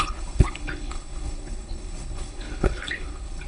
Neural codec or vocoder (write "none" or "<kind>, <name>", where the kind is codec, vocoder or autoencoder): codec, HILCodec